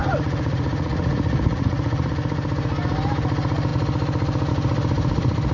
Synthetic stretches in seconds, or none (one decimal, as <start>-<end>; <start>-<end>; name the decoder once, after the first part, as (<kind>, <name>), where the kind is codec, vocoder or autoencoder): 0.0-2.1 (vocoder, Vocos)